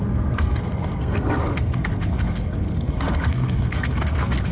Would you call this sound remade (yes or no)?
yes